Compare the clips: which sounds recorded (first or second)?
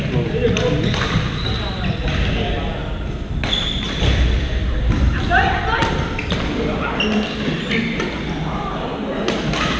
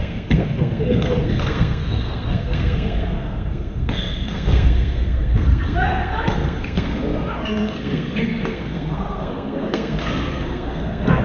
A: first